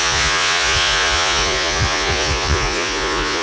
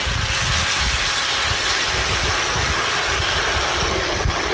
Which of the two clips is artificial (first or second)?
first